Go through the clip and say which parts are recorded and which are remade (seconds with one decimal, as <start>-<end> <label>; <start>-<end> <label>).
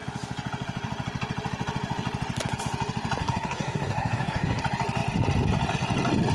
0.0-3.2 recorded; 3.2-4.6 remade; 4.6-6.3 recorded